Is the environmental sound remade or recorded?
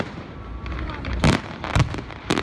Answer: remade